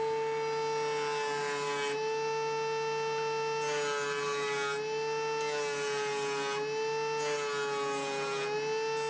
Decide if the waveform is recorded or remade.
recorded